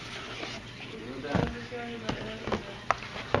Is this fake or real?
real